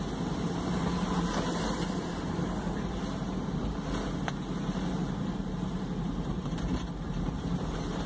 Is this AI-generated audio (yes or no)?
yes